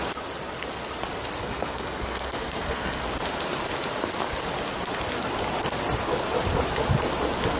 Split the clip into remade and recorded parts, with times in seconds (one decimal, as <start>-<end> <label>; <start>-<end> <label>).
0.0-1.4 recorded; 1.4-3.1 remade; 3.1-7.6 recorded